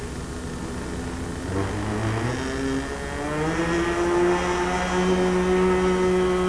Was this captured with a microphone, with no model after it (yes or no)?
yes